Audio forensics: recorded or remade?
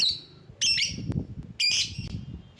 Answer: recorded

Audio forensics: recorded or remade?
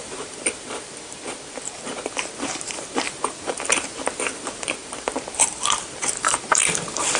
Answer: remade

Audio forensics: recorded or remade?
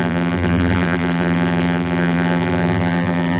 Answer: remade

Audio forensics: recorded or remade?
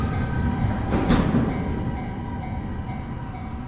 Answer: recorded